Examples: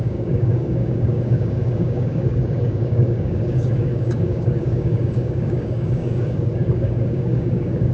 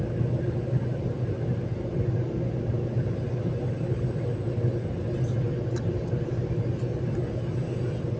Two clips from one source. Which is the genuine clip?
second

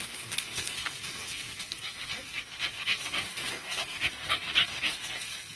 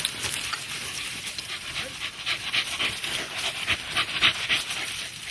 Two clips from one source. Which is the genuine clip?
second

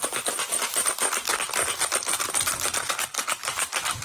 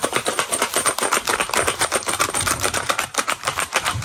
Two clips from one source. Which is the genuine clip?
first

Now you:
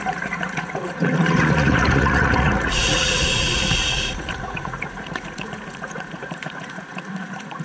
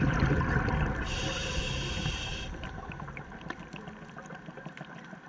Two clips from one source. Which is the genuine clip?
second